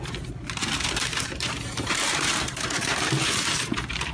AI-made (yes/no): yes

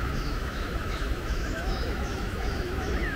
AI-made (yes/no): yes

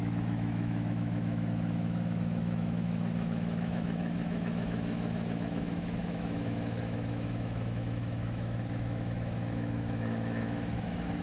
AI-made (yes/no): yes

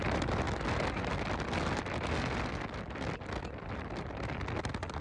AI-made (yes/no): no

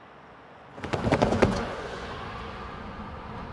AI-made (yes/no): yes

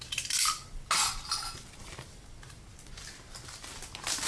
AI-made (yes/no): no